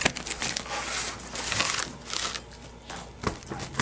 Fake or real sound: real